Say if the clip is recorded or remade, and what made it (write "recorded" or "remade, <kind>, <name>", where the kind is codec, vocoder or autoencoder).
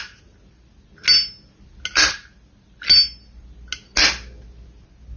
recorded